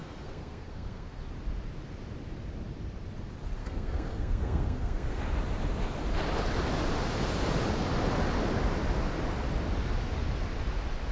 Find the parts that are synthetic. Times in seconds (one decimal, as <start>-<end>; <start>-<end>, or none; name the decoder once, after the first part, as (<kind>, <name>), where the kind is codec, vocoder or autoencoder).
0.0-1.2 (codec, SNAC); 3.6-5.2